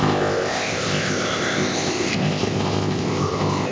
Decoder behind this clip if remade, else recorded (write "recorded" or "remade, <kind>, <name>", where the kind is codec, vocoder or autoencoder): remade, codec, ZipCodec